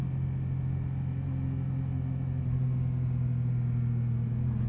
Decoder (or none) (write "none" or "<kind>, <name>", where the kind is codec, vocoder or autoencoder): none